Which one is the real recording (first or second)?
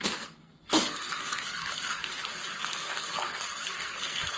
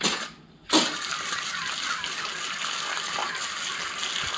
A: second